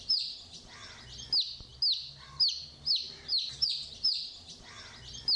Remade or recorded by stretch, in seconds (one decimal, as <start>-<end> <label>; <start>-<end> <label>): 0.0-5.4 recorded